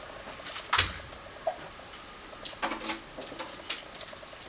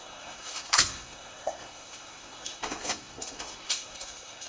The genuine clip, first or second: first